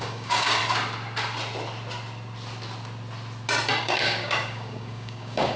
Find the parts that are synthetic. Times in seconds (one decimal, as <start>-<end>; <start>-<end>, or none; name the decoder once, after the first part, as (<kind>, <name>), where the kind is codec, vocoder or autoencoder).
0.0-0.6 (codec, DAC); 3.8-5.6

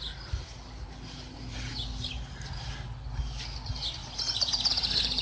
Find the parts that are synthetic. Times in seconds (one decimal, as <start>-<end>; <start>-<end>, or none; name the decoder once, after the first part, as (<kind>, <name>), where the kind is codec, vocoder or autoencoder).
none

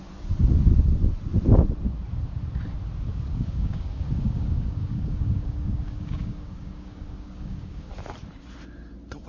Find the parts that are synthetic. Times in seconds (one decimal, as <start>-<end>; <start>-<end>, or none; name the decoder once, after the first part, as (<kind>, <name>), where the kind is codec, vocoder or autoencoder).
3.1-7.9 (codec, DAC)

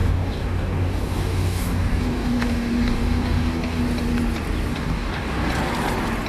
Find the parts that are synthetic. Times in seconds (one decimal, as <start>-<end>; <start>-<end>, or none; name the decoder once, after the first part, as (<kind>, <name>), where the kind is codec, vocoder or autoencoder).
0.0-3.8 (codec, DAC); 4.7-5.5

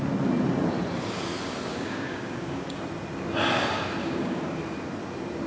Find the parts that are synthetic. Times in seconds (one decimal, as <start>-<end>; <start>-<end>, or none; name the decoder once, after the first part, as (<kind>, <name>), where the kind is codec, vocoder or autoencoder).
1.7-2.8 (codec, DAC); 4.0-4.6